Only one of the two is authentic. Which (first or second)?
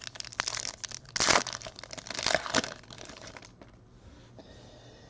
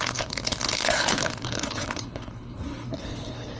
first